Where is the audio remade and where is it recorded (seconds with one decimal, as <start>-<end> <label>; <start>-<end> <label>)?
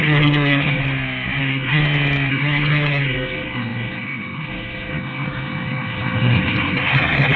0.0-0.8 remade; 0.8-1.4 recorded; 1.4-1.8 remade; 1.8-2.3 recorded; 2.3-7.4 remade